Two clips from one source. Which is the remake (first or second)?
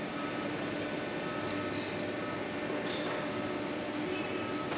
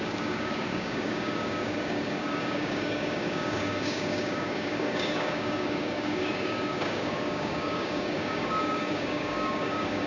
second